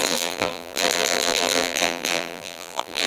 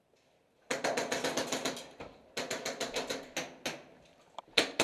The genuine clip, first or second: second